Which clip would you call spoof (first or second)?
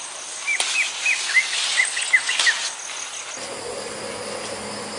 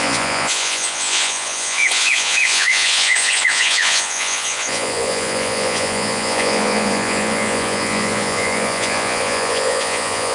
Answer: second